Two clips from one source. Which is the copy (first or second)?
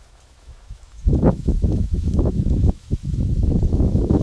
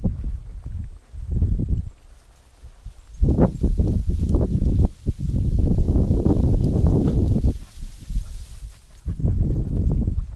first